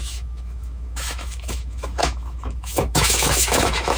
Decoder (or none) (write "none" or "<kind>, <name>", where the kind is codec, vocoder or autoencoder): autoencoder, DAC-VAE